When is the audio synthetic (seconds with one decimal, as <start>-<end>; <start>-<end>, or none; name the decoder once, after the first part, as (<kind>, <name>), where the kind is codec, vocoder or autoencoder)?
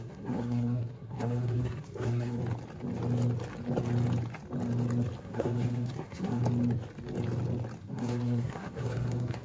0.0-2.4 (codec, SNAC); 5.2-6.4; 7.8-9.4